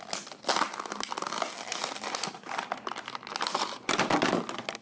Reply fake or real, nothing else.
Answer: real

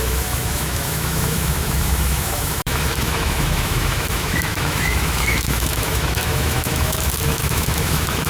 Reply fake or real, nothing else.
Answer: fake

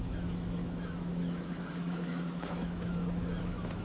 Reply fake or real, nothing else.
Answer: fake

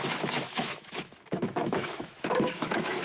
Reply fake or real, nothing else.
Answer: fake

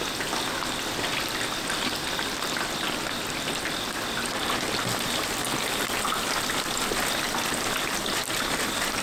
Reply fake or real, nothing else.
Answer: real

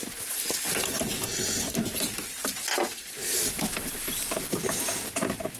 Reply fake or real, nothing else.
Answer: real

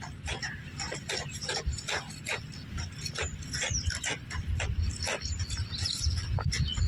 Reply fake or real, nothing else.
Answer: real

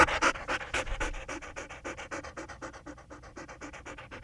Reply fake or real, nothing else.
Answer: real